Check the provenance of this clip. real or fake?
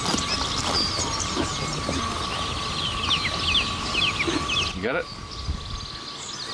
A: real